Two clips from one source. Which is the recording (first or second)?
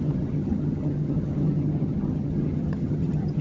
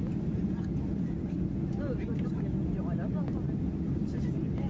second